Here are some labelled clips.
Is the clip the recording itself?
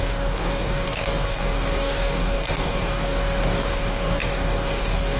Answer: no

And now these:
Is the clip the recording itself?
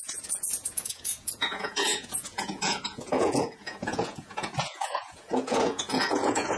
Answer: no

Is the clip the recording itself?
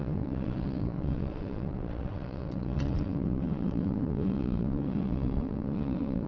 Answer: no